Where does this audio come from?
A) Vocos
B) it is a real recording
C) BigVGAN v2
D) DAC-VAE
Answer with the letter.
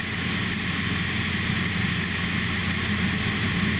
B